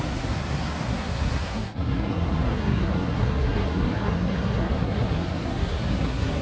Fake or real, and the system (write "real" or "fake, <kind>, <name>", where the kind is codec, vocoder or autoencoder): fake, codec, SNAC